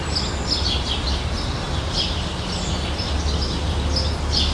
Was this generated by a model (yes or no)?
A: no